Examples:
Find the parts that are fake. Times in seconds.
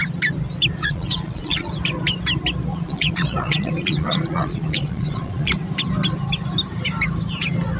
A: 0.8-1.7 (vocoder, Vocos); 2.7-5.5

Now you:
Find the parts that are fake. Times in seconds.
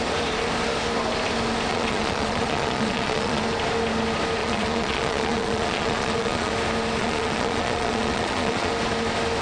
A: 1.7-3.4 (vocoder, Vocos); 4.4-6.5; 7.0-8.7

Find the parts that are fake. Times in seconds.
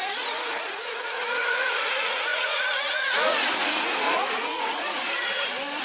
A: 0.0-5.0 (vocoder, Vocos)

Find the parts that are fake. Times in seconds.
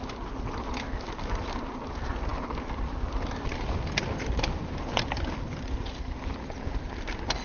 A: none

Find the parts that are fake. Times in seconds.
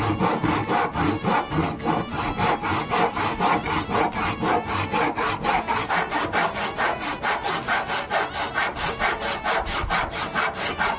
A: none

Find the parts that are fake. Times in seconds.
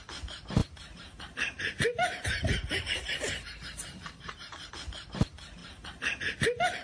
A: 0.6-4.7 (vocoder, BigVGAN v2); 5.6-6.2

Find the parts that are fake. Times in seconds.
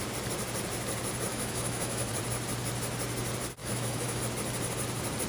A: 1.3-2.1 (autoencoder, DAC-VAE); 3.6-4.2